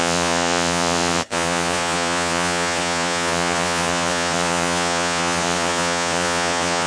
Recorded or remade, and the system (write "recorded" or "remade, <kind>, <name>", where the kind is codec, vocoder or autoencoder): remade, vocoder, Vocos